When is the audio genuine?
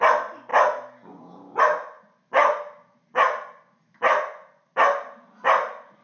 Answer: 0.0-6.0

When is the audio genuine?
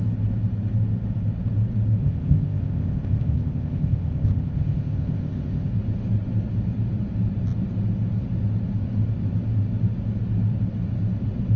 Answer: 0.0-2.0; 5.7-11.6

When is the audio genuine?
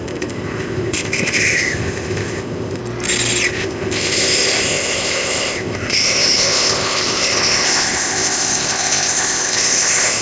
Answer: 2.8-3.5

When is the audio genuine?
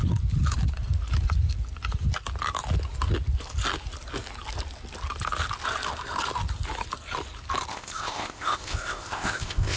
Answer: 0.0-7.7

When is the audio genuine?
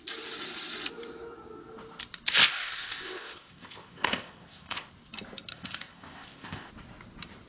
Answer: 0.0-2.4; 4.9-5.5; 6.7-7.5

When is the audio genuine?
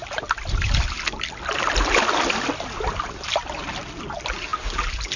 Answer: 0.0-5.2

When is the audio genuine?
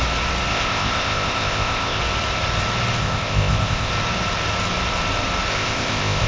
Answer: 0.0-0.5; 2.0-3.0; 3.9-5.5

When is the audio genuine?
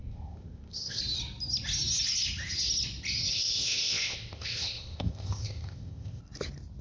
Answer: 1.0-3.3; 6.2-6.8